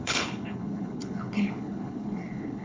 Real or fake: fake